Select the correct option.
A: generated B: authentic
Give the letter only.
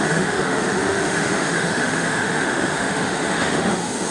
A